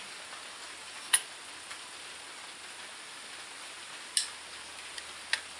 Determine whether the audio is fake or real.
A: real